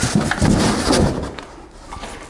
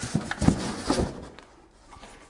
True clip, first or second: first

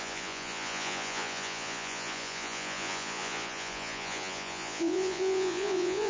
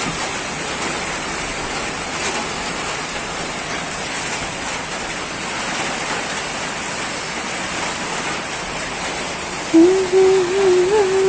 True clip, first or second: second